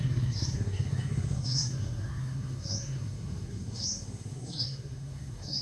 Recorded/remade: remade